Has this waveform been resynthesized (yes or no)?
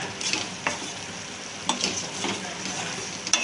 no